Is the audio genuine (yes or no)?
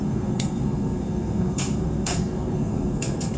no